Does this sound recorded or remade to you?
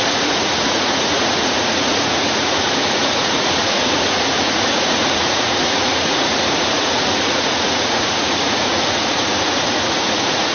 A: remade